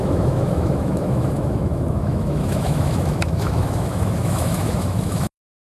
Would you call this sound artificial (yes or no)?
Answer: yes